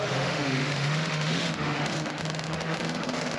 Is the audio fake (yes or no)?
yes